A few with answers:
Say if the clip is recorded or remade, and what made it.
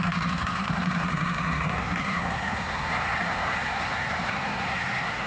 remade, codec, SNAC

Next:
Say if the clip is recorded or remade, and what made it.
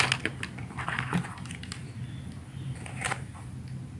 recorded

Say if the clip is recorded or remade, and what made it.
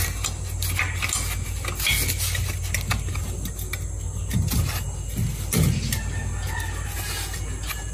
recorded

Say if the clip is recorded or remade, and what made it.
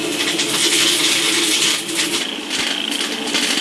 recorded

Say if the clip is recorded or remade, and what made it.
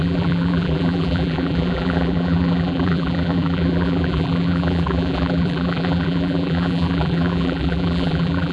remade, vocoder, BigVGAN v2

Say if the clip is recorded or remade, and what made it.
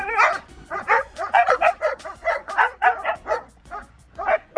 remade, vocoder, Vocos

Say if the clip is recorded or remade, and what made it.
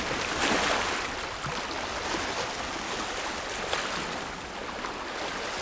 recorded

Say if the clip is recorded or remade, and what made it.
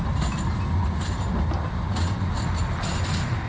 recorded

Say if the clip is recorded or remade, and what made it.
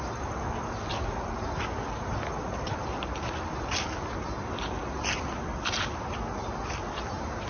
recorded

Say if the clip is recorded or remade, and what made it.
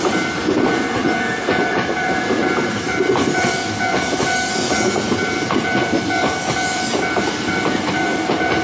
remade, vocoder, BigVGAN v2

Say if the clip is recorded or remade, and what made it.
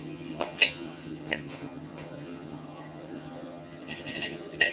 remade, vocoder, HiFi-GAN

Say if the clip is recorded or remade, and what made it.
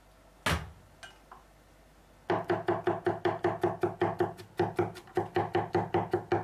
recorded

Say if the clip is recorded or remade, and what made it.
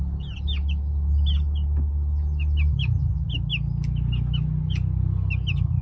recorded